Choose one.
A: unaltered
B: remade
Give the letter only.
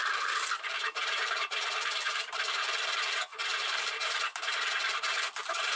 B